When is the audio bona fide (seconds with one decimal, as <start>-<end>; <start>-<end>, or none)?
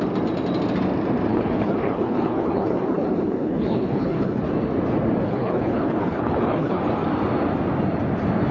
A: 0.0-1.3; 4.4-5.2; 6.8-8.5